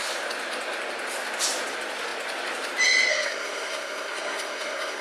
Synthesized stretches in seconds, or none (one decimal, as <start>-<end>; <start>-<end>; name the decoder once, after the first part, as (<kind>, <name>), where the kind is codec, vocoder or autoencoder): 3.1-5.0 (codec, SNAC)